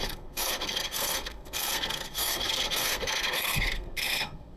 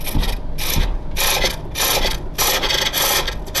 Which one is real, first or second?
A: second